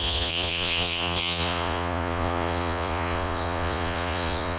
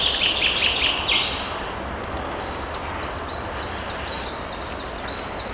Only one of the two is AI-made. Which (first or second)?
first